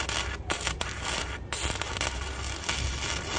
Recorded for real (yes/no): yes